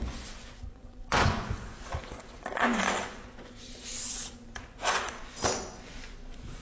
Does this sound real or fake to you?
fake